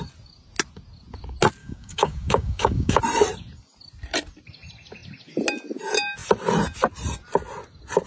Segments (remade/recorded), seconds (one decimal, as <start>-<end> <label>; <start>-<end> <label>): 0.0-1.6 recorded; 1.6-3.0 remade; 3.0-8.1 recorded